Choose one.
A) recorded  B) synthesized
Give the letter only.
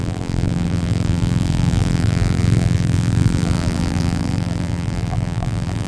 B